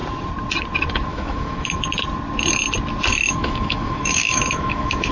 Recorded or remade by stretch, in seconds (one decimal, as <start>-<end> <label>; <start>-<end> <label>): 0.0-1.1 recorded; 1.1-1.8 remade; 1.8-3.1 recorded; 3.1-5.1 remade